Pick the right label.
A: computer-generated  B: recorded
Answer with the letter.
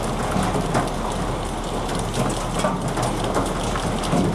B